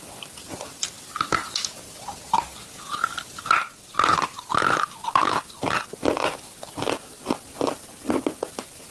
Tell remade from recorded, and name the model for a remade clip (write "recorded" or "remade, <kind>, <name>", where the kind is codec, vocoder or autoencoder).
recorded